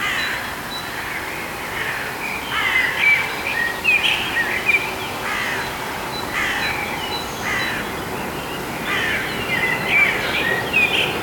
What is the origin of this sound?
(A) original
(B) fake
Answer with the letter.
A